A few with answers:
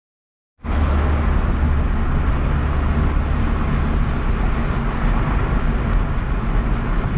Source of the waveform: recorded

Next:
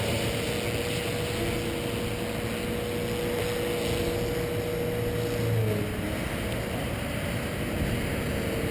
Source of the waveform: recorded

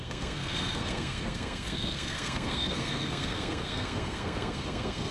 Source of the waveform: remade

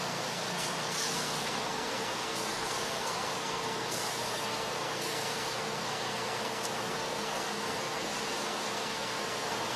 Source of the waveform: remade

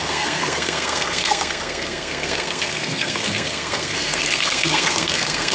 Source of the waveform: remade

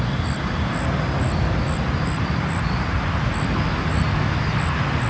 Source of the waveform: recorded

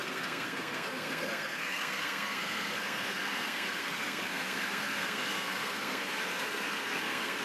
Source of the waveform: remade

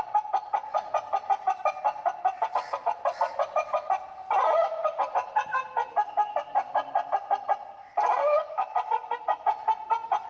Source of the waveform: recorded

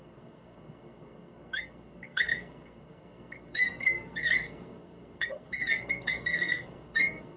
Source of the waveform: remade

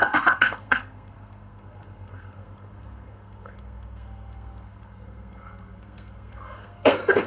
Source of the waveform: remade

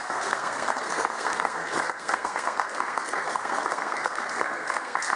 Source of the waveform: remade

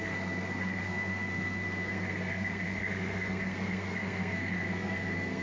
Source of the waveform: remade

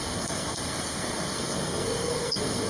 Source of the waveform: remade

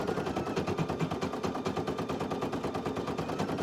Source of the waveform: recorded